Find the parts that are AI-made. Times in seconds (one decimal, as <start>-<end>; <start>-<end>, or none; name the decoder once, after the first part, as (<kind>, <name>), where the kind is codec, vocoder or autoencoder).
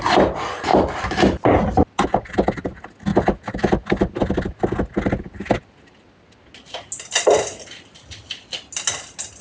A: none